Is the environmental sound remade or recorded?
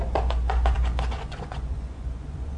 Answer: remade